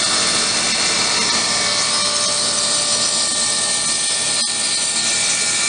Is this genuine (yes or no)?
yes